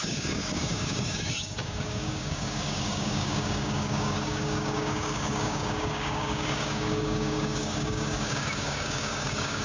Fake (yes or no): yes